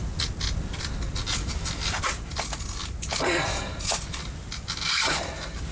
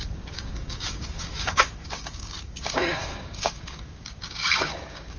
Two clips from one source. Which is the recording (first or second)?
first